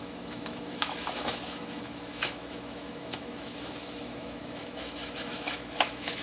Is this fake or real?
fake